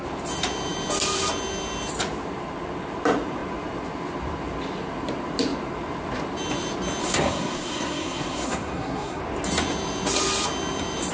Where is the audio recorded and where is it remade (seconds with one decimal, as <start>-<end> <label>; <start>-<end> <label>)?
0.0-7.0 recorded; 7.0-9.2 remade; 9.2-11.1 recorded

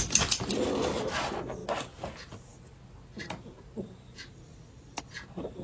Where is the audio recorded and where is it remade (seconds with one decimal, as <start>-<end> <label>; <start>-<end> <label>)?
0.0-5.6 recorded

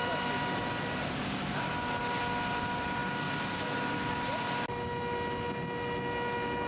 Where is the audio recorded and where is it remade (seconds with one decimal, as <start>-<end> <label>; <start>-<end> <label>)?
0.0-6.7 recorded